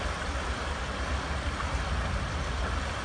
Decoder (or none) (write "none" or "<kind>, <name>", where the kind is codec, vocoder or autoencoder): none